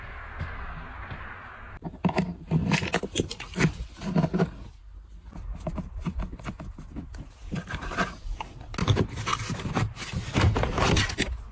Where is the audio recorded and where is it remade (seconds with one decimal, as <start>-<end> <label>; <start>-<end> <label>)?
0.0-2.6 recorded; 2.6-3.9 remade; 3.9-6.3 recorded; 6.3-7.0 remade; 7.0-7.4 recorded; 7.4-8.5 remade; 8.5-9.3 recorded; 9.3-10.9 remade; 10.9-11.5 recorded